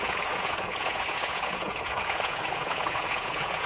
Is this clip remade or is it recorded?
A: remade